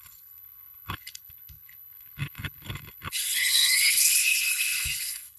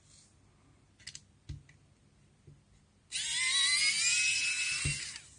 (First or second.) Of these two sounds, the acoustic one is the second